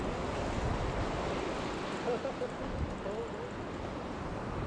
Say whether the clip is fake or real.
real